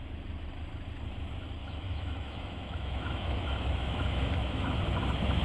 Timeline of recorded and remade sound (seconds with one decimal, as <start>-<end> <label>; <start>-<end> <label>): 0.0-1.6 recorded; 1.6-4.8 remade; 4.8-5.4 recorded